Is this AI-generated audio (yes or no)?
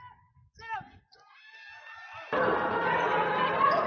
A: no